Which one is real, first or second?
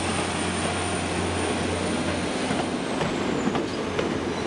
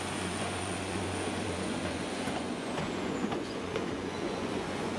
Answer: first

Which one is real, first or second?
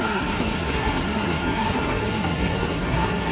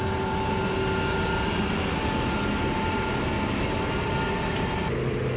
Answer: second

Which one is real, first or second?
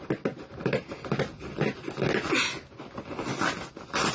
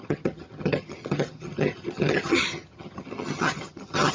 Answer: first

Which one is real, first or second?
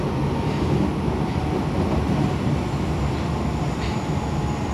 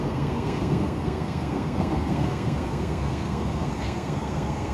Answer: first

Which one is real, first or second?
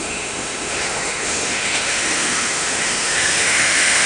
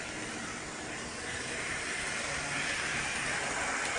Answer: second